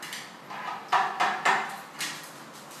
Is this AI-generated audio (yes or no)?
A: no